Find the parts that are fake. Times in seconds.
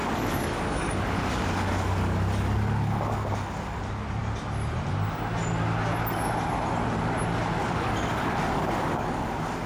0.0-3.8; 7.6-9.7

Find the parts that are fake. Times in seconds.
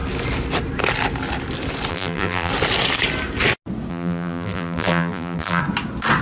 1.9-2.5; 3.9-5.6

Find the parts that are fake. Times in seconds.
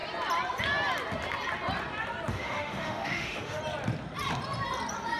2.3-3.6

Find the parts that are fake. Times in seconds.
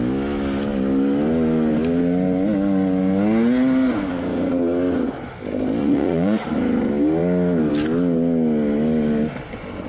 5.8-6.5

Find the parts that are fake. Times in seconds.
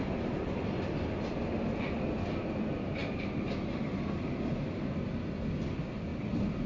none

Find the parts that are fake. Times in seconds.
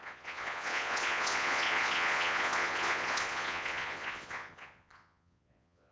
0.0-5.9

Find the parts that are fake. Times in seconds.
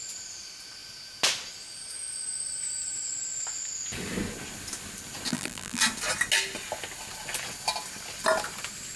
5.3-5.8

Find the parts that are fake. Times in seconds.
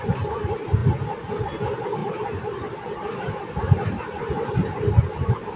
2.0-5.6